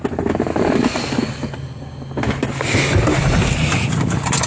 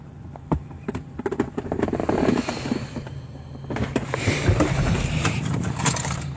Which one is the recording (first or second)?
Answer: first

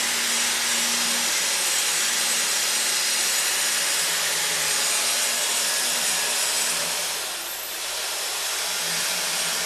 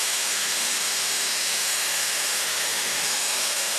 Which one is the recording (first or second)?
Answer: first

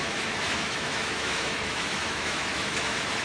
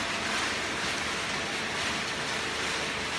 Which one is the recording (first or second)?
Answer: second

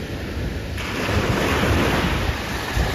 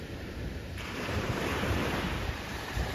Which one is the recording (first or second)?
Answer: first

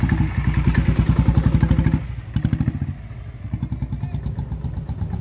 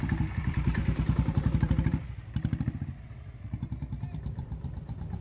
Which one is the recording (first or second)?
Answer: first